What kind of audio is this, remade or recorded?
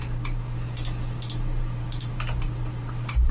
recorded